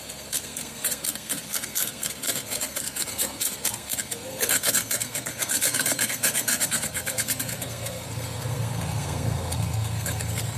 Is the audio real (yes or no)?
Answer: no